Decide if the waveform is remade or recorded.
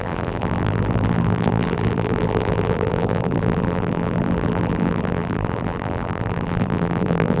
remade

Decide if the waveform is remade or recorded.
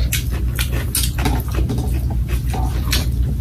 recorded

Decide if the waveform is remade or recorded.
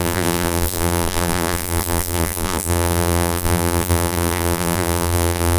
remade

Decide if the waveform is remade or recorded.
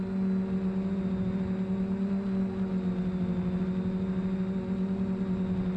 recorded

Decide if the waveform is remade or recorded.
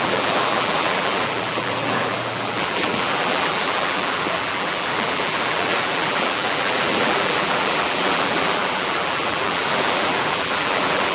remade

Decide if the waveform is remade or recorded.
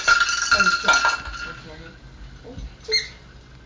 recorded